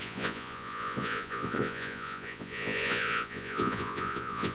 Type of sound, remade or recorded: remade